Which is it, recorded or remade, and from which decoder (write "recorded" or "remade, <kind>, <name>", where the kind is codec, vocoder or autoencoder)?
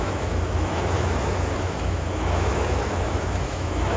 remade, autoencoder, DAC-VAE